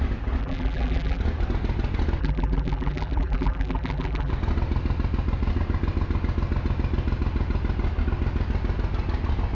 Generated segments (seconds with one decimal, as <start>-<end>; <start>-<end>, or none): 0.4-1.2; 2.2-4.3